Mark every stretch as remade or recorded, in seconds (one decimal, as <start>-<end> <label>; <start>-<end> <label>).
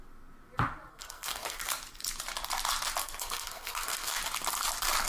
0.0-0.9 recorded; 0.9-1.6 remade; 1.6-3.0 recorded; 3.0-4.2 remade; 4.2-5.1 recorded